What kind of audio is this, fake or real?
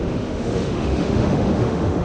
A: fake